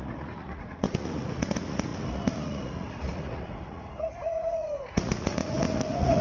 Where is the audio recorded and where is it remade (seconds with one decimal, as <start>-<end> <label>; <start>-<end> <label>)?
0.0-6.2 remade